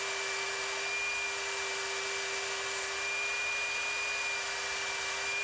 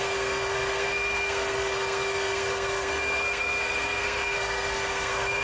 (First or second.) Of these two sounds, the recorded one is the first